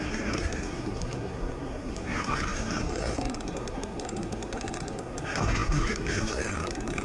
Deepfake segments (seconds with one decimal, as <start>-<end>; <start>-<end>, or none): 0.0-7.0

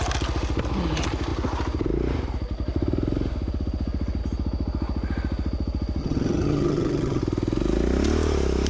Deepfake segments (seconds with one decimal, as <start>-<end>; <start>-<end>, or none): 6.0-7.2